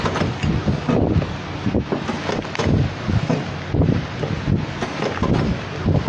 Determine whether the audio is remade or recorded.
recorded